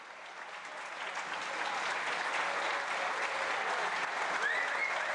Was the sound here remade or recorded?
recorded